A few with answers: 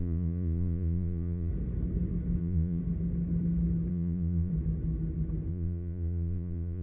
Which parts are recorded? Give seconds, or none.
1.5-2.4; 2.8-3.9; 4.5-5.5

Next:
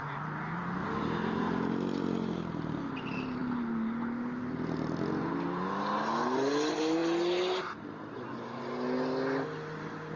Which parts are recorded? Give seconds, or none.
0.0-10.2

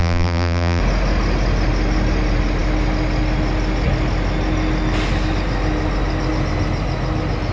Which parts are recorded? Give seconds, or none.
0.8-7.5